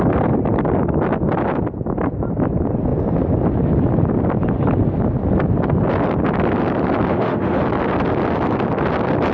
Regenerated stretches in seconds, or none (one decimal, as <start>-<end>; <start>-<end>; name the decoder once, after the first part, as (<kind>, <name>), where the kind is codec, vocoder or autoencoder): 7.1-7.6 (autoencoder, DAC-VAE)